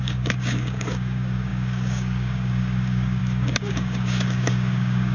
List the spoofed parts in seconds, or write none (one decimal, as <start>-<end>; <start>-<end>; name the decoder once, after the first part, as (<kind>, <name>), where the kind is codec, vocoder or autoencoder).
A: 0.0-5.1 (codec, DAC)